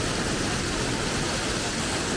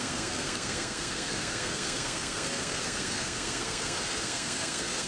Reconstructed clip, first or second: second